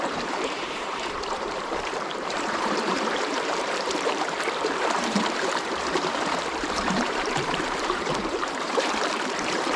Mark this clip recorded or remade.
remade